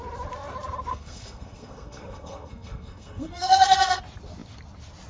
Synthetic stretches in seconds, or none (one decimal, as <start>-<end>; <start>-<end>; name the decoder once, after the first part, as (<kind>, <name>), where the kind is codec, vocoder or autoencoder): 0.9-4.0 (codec, SNAC)